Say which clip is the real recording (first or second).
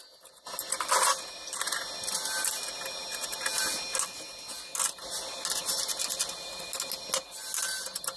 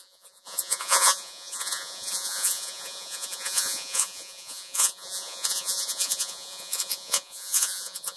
first